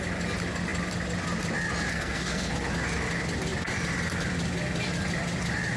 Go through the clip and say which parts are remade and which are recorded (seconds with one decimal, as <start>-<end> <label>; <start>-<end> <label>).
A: 0.0-1.9 recorded; 1.9-2.5 remade; 2.5-5.8 recorded